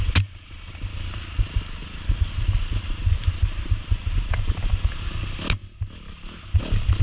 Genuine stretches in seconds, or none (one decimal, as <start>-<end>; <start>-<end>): 0.0-1.8; 2.3-3.0; 4.7-7.0